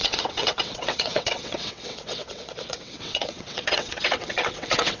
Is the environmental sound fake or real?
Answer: fake